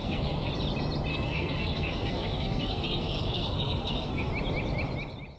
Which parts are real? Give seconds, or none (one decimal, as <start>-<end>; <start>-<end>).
0.5-1.1; 4.3-5.4